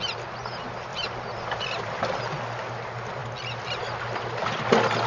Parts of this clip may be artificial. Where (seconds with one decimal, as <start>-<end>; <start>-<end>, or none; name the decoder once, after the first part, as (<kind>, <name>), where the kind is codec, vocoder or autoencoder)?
0.9-2.1 (vocoder, BigVGAN v2)